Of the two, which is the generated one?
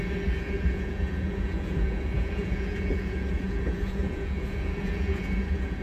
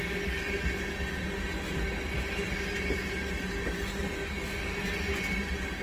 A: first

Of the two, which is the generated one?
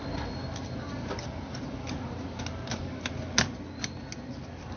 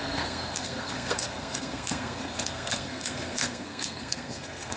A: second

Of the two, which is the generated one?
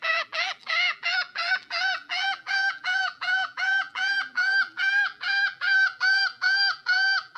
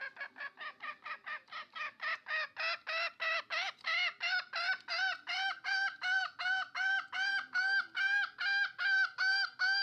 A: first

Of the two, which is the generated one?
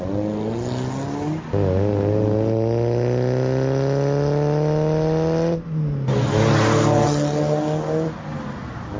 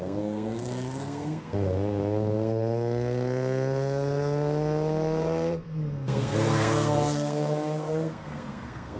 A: second